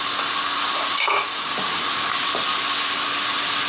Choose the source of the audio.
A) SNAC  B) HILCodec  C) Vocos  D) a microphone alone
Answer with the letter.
D